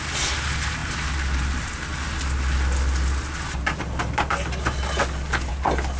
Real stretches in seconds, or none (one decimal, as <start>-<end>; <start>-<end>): 0.0-6.0